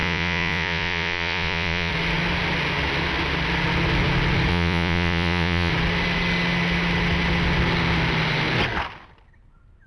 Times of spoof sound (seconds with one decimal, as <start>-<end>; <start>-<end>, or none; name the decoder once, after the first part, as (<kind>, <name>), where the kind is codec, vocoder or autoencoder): 0.0-1.9 (vocoder, Vocos); 4.5-5.7